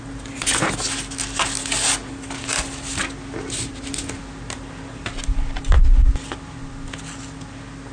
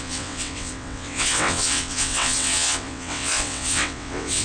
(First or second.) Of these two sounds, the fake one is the second